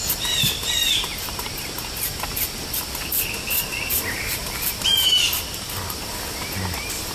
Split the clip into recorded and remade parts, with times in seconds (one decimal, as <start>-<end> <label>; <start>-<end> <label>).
0.0-7.1 recorded